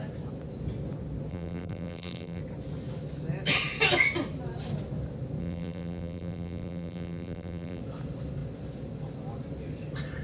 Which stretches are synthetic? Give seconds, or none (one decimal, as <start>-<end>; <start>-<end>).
1.3-2.4; 5.4-7.8